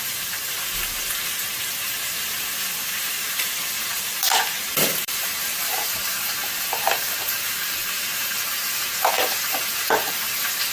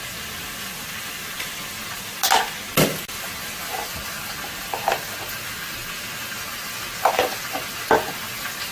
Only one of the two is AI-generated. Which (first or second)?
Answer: first